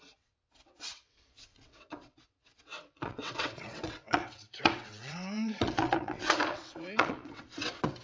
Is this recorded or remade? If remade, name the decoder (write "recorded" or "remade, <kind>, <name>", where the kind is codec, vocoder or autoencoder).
remade, vocoder, WaveNeXt